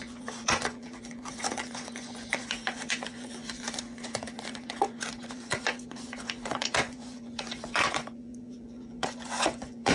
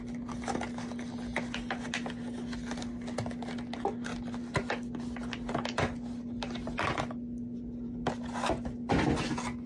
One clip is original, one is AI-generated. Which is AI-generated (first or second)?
first